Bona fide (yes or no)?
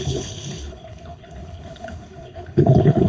no